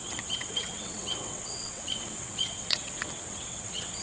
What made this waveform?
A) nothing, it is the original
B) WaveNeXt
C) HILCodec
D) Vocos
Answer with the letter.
B